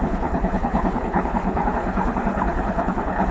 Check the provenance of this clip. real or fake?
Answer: fake